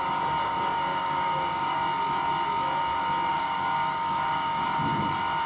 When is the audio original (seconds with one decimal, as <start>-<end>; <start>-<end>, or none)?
0.0-0.9; 1.8-3.3; 4.6-5.5